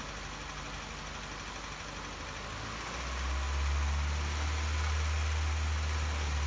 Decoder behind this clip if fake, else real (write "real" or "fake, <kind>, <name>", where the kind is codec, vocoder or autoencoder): real